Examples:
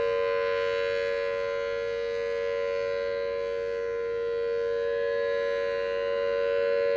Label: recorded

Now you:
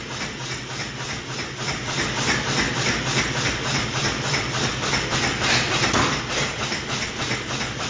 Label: recorded